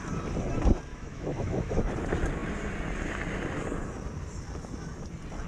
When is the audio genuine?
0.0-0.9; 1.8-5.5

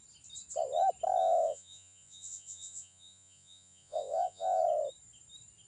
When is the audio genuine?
0.0-1.2; 4.6-5.7

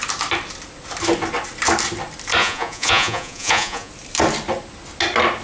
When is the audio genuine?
0.0-2.4; 3.9-5.4

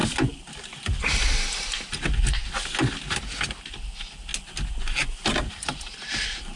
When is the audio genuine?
0.0-1.4; 2.4-3.1; 4.3-5.5

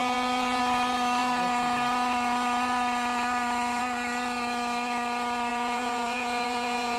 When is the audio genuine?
0.6-5.5

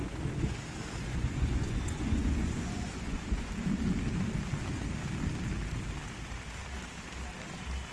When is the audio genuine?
0.6-1.0; 3.5-7.9

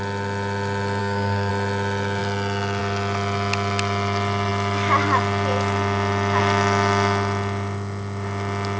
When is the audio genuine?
0.0-1.0; 1.5-8.8